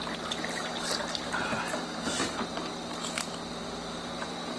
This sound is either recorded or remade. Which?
recorded